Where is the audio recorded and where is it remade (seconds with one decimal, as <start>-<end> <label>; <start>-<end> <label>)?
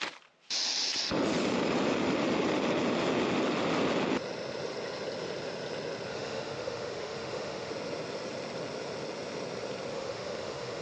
0.0-6.1 recorded; 6.1-7.7 remade; 7.7-9.9 recorded; 9.9-10.8 remade